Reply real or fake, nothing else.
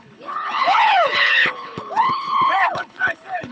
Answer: fake